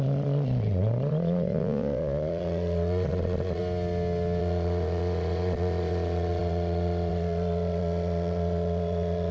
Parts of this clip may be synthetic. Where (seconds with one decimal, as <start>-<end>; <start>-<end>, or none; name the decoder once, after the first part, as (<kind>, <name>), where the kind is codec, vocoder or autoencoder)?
0.0-3.6 (vocoder, Vocos); 4.4-9.3

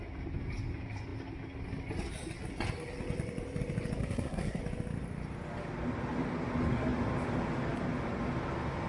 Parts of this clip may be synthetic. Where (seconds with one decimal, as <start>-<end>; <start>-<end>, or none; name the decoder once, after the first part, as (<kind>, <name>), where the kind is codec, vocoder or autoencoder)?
4.0-4.6 (codec, SNAC)

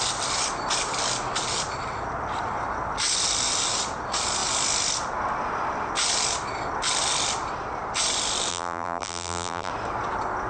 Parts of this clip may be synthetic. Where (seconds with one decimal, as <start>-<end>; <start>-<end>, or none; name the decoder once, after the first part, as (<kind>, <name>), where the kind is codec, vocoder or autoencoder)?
8.5-9.7 (vocoder, BigVGAN v2)

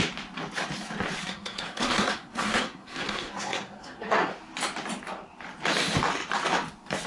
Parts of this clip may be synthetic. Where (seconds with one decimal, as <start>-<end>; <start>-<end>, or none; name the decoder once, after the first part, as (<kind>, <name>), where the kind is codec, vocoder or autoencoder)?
1.2-4.3 (codec, SNAC)

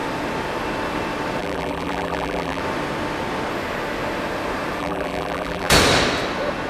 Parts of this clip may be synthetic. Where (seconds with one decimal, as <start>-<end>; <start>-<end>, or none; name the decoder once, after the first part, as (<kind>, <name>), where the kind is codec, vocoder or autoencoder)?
1.4-2.6 (vocoder, BigVGAN v2); 4.8-5.7

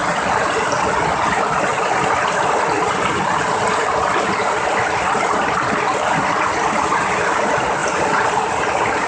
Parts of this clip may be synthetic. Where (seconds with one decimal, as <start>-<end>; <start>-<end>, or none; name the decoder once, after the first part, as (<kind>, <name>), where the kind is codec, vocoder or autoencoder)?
none